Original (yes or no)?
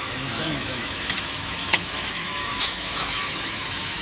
no